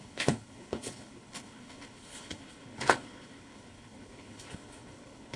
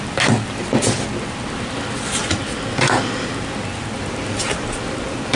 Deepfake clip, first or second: first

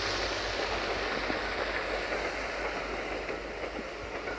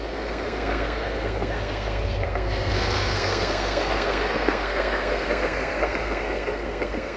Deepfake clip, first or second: second